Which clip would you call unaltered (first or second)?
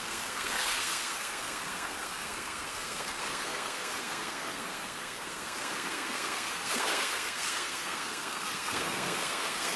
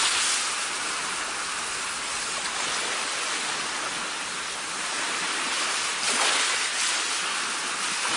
second